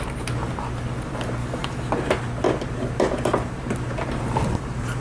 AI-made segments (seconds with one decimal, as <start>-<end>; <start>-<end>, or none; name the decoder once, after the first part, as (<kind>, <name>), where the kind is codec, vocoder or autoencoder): 1.4-1.9 (autoencoder, DAC-VAE)

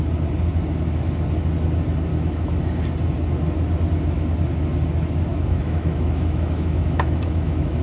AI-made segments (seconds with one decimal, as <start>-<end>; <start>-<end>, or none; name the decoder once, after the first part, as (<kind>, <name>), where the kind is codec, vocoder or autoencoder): 2.1-2.6 (autoencoder, DAC-VAE); 5.3-7.8

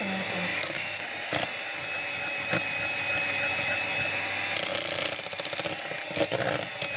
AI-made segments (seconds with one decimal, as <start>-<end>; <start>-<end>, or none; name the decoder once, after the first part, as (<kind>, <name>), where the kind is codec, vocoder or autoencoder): 0.5-1.0 (autoencoder, DAC-VAE)

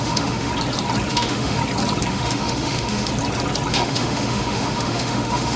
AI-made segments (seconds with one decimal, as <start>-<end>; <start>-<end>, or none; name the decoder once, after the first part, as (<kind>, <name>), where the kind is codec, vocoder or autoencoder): 0.0-0.5 (autoencoder, DAC-VAE); 1.1-1.6; 2.1-3.1; 3.7-5.6

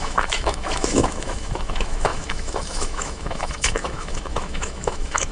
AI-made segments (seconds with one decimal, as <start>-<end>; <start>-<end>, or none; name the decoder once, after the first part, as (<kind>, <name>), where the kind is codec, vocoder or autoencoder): 0.0-5.3 (autoencoder, DAC-VAE)

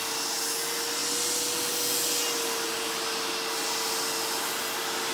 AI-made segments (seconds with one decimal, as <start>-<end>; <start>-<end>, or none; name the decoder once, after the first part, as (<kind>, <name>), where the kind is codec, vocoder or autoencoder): none

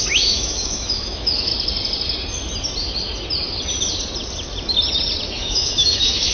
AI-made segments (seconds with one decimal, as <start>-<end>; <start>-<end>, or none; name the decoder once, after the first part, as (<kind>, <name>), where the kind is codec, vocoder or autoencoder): 0.0-1.5 (autoencoder, DAC-VAE); 5.3-6.3